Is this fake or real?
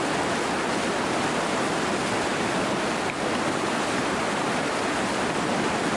real